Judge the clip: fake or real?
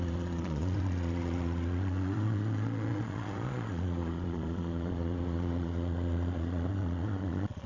fake